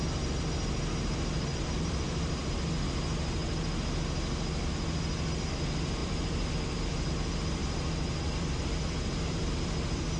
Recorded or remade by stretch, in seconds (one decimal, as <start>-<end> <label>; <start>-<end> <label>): 0.0-1.5 recorded; 1.5-2.5 remade; 2.5-6.0 recorded; 6.0-7.1 remade; 7.1-7.6 recorded; 7.6-9.7 remade; 9.7-10.2 recorded